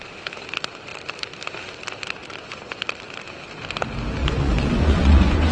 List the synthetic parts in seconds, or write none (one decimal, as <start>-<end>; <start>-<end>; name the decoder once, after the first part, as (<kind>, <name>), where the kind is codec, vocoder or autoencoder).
2.2-2.8 (vocoder, Vocos); 4.2-5.5